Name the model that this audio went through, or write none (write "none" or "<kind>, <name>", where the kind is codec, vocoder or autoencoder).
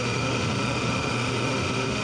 autoencoder, DAC-VAE